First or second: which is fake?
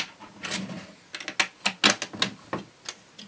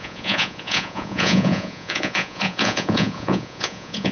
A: second